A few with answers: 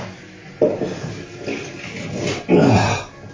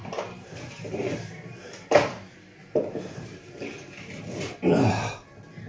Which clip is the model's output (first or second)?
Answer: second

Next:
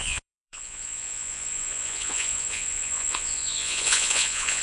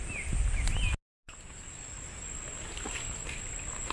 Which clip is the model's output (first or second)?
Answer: first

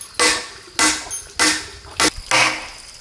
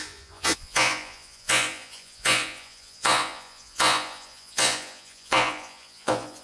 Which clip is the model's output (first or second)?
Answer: second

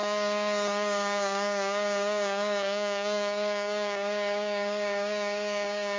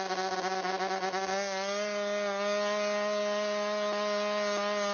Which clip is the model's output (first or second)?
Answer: first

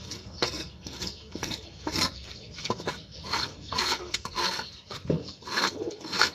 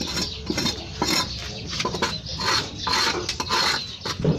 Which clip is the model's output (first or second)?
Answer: first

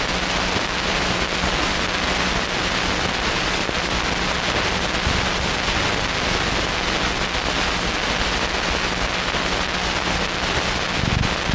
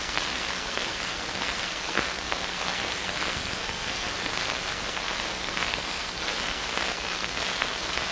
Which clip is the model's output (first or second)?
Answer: second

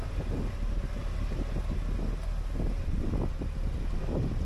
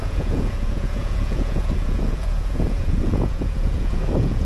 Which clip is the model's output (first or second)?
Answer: second